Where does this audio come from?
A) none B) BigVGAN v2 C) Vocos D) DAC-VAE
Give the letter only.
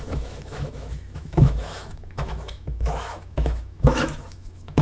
D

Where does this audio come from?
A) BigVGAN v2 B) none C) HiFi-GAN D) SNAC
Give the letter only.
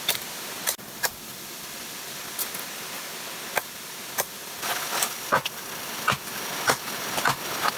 B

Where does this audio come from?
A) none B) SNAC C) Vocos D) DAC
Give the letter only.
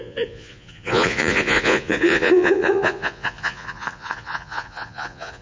C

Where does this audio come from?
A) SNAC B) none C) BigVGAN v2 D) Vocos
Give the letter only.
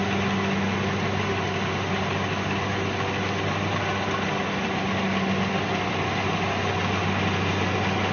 B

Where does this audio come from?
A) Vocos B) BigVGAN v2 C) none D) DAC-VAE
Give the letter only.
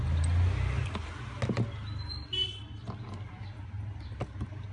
C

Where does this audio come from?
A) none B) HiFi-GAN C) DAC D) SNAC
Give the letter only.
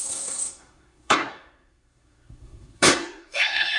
D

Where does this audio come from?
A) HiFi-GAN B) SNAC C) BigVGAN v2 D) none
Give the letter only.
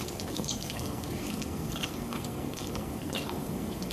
B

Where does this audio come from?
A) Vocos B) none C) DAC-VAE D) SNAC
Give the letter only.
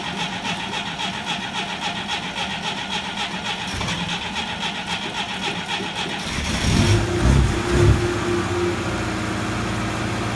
B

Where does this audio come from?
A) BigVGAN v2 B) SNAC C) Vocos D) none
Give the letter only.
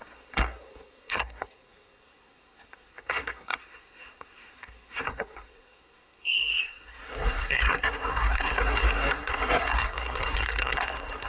B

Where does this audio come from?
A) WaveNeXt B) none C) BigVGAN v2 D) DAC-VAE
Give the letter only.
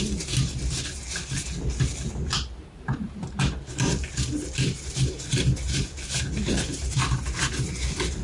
B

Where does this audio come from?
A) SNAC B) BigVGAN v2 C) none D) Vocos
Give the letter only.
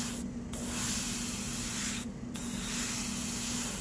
C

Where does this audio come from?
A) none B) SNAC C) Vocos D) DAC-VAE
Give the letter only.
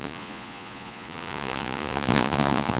C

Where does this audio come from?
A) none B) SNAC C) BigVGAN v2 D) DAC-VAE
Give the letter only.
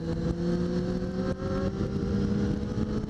A